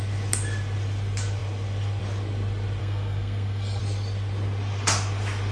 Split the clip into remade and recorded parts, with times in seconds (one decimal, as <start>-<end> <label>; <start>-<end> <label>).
0.0-2.8 recorded; 2.8-3.8 remade; 3.8-5.5 recorded